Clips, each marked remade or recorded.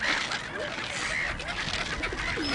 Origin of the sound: recorded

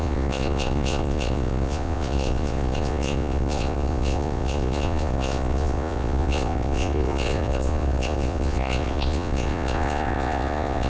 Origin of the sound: remade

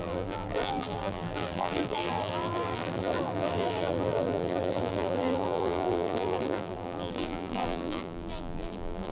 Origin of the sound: remade